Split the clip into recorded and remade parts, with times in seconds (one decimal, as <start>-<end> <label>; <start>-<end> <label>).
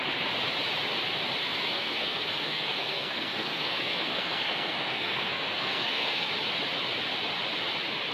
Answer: 0.0-1.4 recorded; 1.4-6.3 remade; 6.3-8.1 recorded